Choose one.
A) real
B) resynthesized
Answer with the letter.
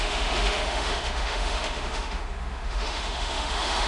B